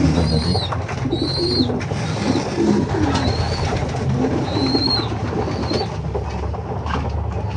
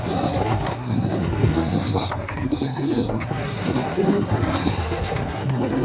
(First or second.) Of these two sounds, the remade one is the second